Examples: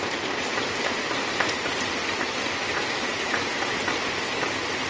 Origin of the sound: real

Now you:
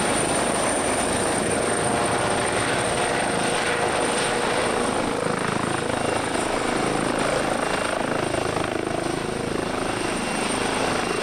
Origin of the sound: real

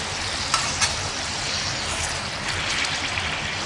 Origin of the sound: real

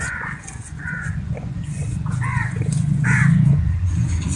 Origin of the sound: fake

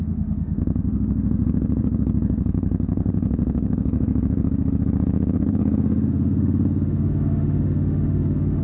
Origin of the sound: fake